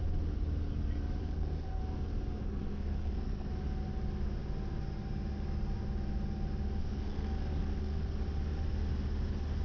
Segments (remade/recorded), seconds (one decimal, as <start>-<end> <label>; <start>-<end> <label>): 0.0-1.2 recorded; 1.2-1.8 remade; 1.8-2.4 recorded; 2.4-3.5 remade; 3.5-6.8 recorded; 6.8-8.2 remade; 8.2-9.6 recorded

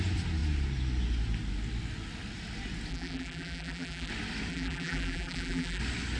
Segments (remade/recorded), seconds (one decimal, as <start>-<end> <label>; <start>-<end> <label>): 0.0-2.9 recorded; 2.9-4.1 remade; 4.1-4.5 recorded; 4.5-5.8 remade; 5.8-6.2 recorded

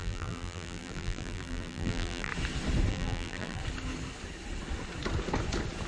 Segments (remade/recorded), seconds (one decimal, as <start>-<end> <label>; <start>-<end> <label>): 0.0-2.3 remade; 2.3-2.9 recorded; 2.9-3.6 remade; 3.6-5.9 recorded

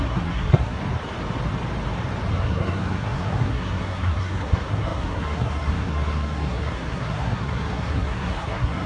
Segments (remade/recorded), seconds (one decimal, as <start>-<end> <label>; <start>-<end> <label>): 0.0-0.8 remade; 0.8-2.3 recorded; 2.3-8.9 remade

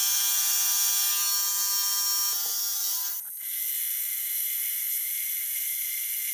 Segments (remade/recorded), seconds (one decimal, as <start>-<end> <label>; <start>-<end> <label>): 0.0-6.3 recorded